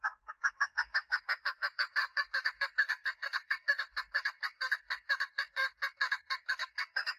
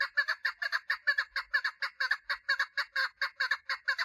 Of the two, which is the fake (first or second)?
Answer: first